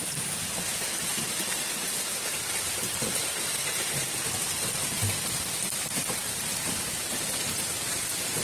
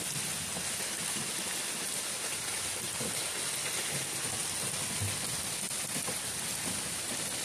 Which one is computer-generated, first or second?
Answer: first